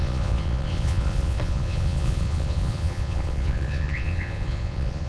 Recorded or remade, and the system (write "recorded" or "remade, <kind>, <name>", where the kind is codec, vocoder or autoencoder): remade, vocoder, Vocos